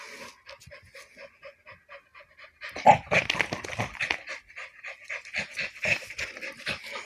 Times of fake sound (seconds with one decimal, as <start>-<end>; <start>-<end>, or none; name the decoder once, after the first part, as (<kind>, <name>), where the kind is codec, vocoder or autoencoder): none